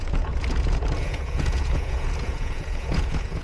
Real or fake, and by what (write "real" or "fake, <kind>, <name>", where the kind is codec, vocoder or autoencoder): fake, vocoder, Vocos